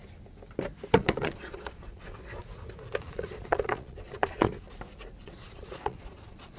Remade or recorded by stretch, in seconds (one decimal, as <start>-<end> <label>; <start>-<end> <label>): 0.0-0.9 recorded; 0.9-2.4 remade; 2.4-3.0 recorded; 3.0-4.5 remade; 4.5-5.2 recorded; 5.2-6.6 remade